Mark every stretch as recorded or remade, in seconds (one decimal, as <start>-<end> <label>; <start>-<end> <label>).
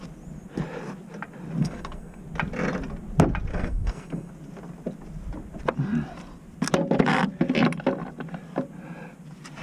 0.0-1.6 recorded; 1.6-2.2 remade; 2.2-3.5 recorded; 3.5-4.3 remade; 4.3-9.6 recorded